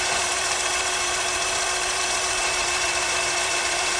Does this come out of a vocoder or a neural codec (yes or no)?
yes